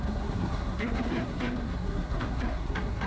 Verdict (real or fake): fake